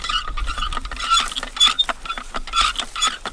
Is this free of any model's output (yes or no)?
yes